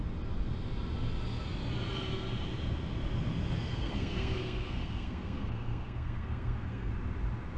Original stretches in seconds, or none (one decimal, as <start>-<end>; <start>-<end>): 0.0-3.7; 6.9-7.6